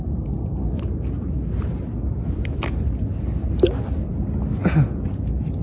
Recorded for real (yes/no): yes